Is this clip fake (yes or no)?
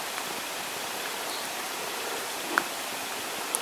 yes